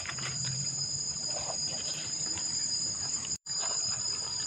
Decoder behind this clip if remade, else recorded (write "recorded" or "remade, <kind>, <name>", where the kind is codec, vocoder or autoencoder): remade, vocoder, BigVGAN v2